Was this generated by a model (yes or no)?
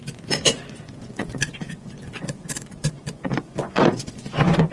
yes